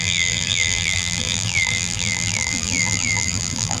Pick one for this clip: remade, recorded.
remade